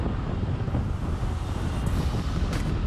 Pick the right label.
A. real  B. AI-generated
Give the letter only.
A